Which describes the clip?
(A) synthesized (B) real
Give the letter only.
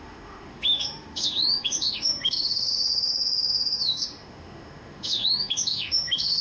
A